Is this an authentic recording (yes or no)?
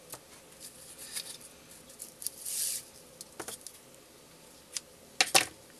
yes